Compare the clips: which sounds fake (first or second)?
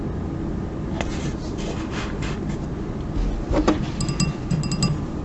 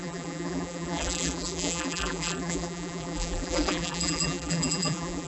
second